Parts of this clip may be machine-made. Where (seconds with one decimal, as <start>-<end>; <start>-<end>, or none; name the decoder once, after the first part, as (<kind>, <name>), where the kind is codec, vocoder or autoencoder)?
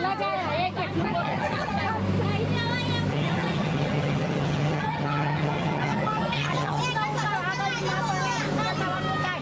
1.0-1.8 (vocoder, HiFi-GAN); 3.1-6.8